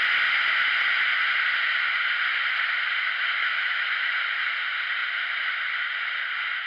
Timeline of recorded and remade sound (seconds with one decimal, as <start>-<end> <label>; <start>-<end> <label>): 0.0-3.4 recorded; 3.4-4.0 remade; 4.0-6.7 recorded